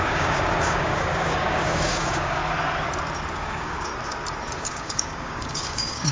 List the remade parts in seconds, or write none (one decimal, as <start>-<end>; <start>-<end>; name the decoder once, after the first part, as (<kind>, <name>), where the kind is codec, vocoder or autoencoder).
0.0-2.4 (codec, DAC); 3.3-3.9; 4.6-6.1